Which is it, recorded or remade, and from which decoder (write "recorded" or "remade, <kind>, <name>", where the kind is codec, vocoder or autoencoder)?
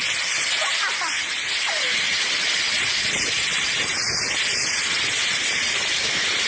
recorded